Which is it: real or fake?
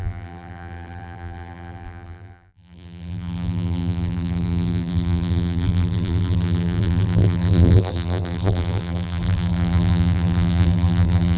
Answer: fake